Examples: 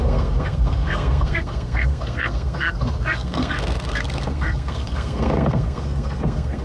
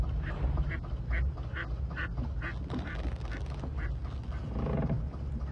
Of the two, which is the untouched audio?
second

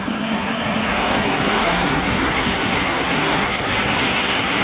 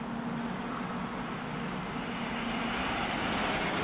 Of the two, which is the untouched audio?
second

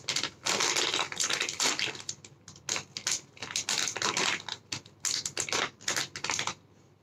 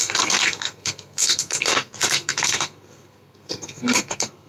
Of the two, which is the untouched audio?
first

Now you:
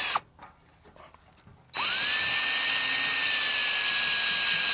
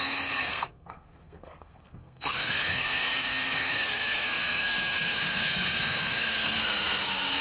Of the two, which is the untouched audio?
first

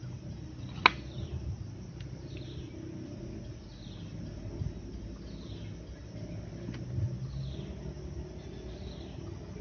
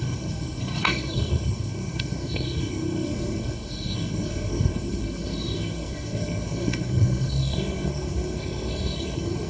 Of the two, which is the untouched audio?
first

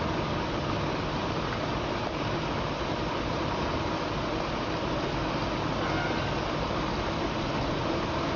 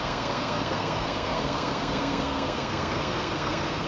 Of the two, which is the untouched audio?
first